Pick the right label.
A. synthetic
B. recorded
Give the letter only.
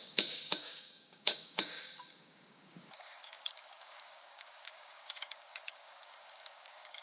A